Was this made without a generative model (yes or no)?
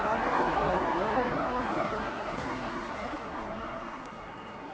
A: no